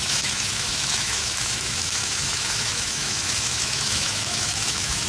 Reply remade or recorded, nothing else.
remade